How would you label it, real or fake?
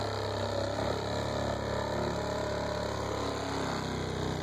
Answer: real